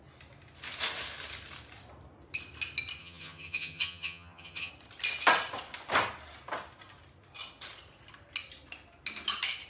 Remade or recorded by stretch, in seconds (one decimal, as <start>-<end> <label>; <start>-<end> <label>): 0.0-3.0 recorded; 3.0-4.7 remade; 4.7-9.7 recorded